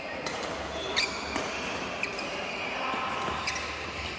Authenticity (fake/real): real